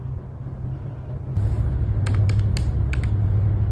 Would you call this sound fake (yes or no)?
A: no